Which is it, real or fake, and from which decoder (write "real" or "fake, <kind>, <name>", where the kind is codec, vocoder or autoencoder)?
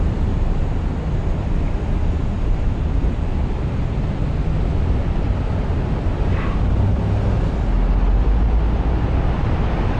real